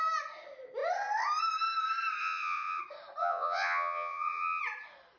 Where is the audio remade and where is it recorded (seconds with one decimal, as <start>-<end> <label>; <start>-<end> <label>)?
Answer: 0.0-2.2 recorded; 2.2-2.8 remade; 2.8-3.2 recorded; 3.2-4.6 remade; 4.6-5.2 recorded